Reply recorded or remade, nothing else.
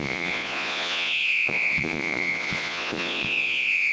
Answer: remade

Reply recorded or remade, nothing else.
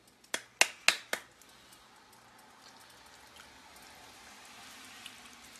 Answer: recorded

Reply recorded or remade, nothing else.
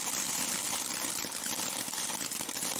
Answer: recorded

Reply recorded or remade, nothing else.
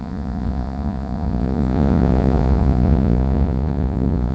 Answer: remade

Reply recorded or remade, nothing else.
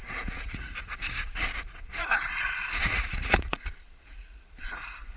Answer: remade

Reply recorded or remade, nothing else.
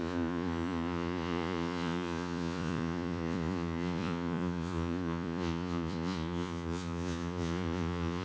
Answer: remade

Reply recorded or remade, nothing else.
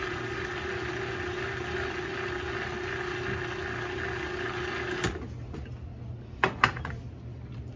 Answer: recorded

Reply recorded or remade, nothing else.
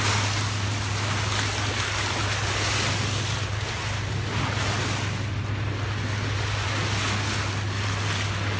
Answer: recorded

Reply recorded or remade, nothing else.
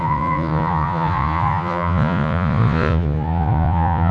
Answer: remade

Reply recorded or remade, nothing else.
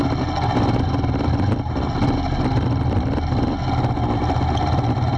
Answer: recorded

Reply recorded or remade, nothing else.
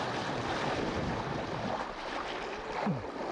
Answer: recorded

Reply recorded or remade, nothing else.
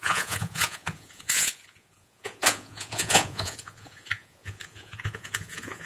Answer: remade